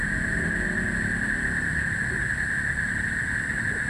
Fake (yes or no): no